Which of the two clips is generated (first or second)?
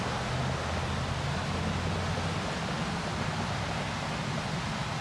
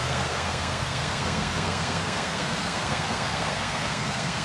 second